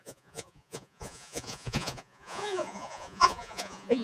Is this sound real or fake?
fake